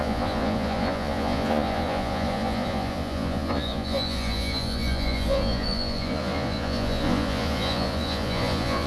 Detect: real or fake fake